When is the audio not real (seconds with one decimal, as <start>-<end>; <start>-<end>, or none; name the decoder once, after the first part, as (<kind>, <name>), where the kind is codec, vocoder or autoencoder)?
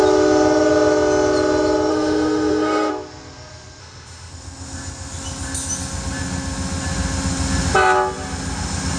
1.9-2.9 (autoencoder, DAC-VAE); 3.8-4.3